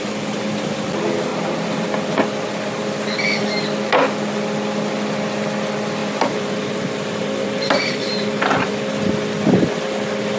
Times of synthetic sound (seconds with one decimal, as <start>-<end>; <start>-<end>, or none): 1.3-2.1; 6.0-8.7